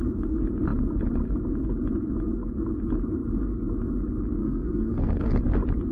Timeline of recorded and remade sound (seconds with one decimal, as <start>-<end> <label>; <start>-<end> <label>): 0.0-4.4 recorded; 4.4-5.3 remade; 5.3-5.9 recorded